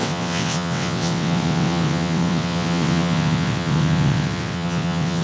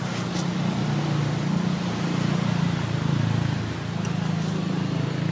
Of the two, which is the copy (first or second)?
first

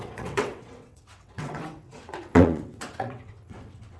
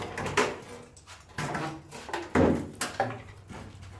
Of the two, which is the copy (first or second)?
first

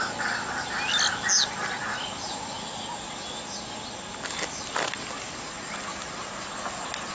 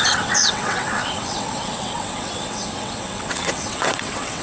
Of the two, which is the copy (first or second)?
second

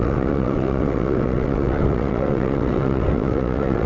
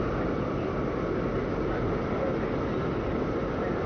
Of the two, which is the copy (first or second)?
first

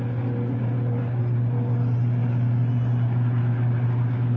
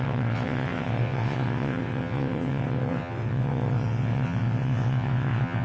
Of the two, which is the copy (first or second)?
second